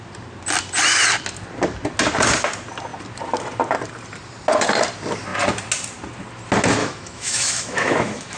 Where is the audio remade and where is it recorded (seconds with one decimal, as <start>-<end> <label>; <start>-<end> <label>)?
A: 0.0-6.8 recorded; 6.8-8.4 remade